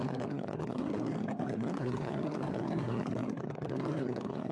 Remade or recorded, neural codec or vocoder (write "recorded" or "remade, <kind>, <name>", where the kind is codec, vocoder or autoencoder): remade, codec, SNAC